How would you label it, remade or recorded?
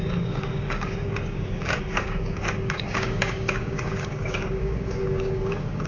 remade